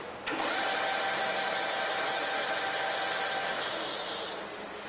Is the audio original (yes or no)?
yes